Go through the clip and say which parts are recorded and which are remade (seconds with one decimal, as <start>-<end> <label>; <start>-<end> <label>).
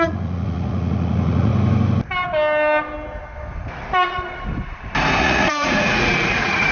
0.0-1.5 remade; 1.5-5.2 recorded; 5.2-6.7 remade